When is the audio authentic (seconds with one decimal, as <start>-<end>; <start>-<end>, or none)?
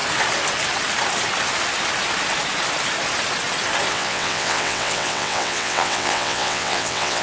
0.0-3.9